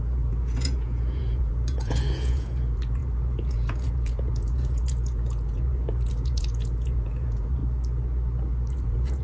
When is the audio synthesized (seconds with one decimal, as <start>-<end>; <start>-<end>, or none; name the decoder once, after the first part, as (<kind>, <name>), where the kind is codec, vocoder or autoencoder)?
0.0-7.6 (vocoder, Vocos); 8.7-9.2